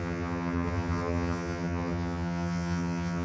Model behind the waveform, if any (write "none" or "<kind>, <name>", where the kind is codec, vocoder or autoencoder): vocoder, HiFi-GAN